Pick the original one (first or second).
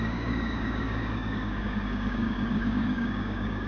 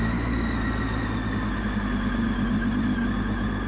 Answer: second